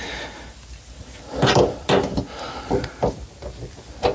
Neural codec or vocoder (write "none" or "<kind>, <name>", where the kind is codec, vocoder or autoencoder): none